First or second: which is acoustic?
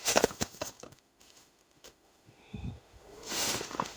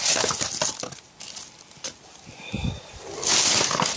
second